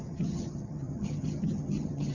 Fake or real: fake